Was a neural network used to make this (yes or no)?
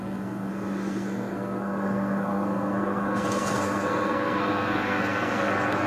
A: yes